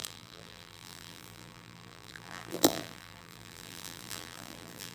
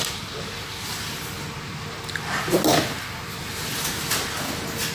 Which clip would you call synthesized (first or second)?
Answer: first